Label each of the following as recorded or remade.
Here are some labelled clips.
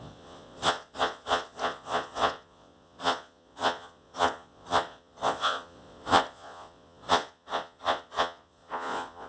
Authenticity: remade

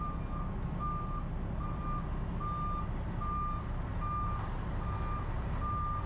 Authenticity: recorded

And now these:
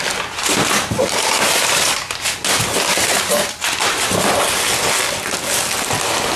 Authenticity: recorded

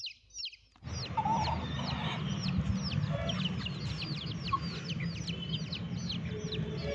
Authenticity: recorded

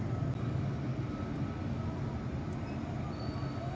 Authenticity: recorded